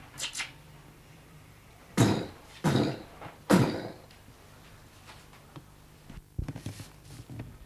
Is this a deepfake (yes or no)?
yes